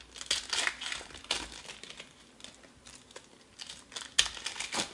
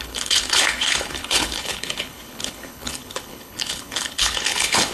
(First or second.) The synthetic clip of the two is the second